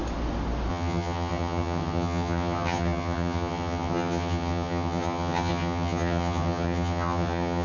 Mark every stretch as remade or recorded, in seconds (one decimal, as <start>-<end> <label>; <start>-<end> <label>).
0.0-0.7 recorded; 0.7-7.6 remade